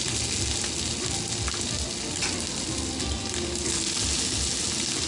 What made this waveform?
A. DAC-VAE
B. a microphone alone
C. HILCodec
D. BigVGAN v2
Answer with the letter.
B